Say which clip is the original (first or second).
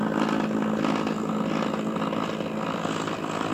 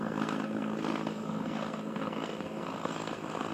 first